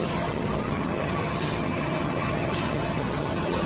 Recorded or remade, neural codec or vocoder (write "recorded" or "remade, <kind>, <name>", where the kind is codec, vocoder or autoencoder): remade, vocoder, HiFi-GAN